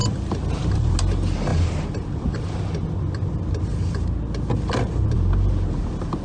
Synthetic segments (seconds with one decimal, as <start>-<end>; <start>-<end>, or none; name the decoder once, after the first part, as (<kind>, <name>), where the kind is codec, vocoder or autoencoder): none